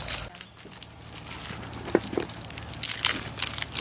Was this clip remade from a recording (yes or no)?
no